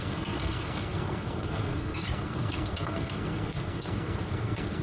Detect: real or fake fake